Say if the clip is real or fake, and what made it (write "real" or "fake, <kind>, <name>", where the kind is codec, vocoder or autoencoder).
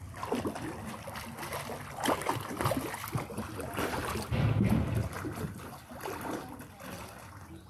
real